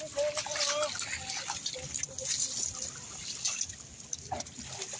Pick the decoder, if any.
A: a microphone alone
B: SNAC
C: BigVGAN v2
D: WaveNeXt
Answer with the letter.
A